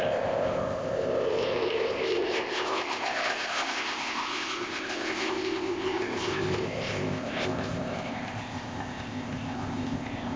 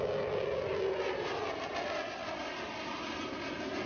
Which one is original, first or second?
second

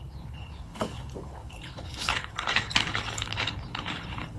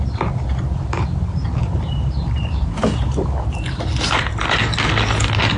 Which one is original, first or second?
second